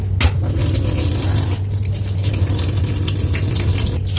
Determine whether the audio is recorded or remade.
recorded